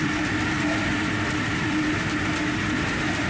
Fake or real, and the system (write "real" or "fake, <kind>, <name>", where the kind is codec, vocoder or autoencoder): fake, vocoder, BigVGAN v2